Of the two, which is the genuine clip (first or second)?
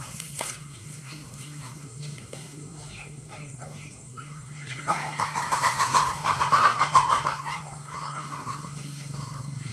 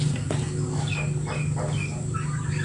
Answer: second